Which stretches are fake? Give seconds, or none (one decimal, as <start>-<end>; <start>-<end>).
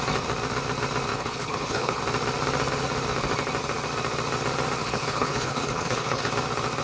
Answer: 1.1-2.0; 4.8-6.3